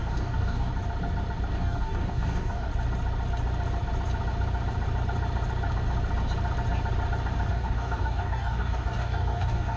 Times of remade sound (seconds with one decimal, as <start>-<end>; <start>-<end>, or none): 0.0-0.7; 1.5-2.7; 7.5-9.8